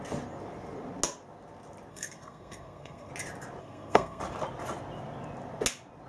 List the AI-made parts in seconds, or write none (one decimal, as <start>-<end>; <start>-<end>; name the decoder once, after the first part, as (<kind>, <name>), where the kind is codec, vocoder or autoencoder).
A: 1.9-3.1 (codec, SNAC); 3.6-4.2